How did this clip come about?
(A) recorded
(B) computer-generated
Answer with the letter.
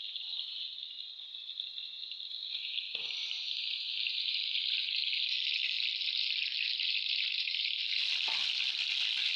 A